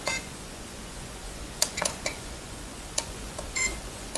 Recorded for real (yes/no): no